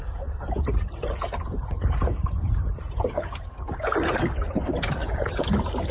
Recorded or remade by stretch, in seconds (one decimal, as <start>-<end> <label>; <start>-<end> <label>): 0.0-5.9 remade